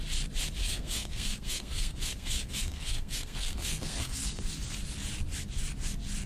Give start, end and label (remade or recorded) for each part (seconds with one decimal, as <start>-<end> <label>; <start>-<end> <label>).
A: 0.0-0.6 recorded; 0.6-4.4 remade; 4.4-6.3 recorded